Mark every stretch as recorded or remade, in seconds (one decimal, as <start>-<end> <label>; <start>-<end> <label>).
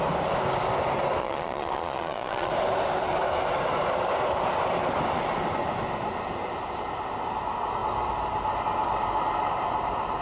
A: 0.0-1.2 recorded; 1.2-2.5 remade; 2.5-10.2 recorded